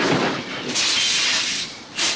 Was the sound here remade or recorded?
remade